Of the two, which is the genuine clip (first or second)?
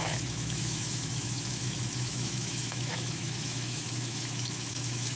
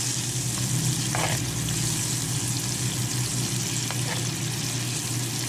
second